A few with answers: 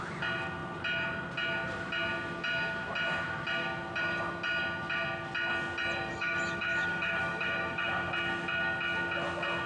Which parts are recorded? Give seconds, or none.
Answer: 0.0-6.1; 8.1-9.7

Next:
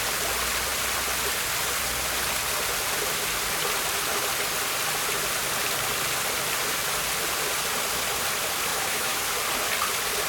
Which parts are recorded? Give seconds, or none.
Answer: 0.0-8.7; 9.2-10.3

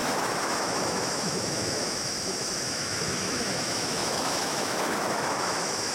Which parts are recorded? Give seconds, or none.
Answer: none